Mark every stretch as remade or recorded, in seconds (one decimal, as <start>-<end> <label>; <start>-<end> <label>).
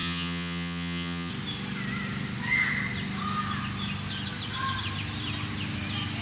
0.0-1.3 remade; 1.3-6.2 recorded